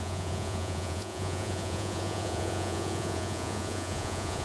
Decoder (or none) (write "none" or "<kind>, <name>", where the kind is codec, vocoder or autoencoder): vocoder, Vocos